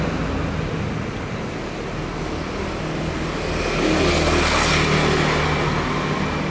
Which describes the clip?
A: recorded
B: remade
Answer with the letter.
A